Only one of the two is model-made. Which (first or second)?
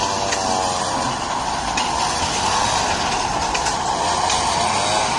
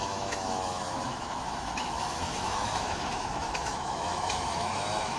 second